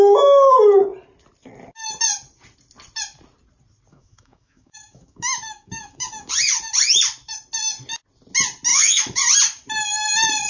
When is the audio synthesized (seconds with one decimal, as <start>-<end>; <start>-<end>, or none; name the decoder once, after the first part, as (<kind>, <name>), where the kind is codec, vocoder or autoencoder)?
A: 3.9-6.3 (autoencoder, DAC-VAE); 8.7-9.2